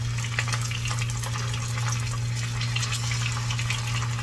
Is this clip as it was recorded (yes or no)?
yes